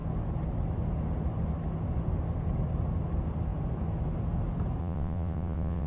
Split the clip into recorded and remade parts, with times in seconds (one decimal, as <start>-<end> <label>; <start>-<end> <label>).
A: 0.0-4.8 recorded; 4.8-5.9 remade